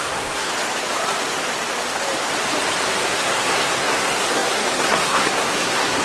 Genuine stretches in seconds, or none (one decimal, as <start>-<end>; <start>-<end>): 0.5-3.1